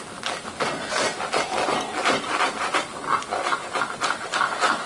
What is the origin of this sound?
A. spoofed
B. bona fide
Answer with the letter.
B